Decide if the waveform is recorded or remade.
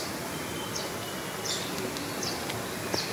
recorded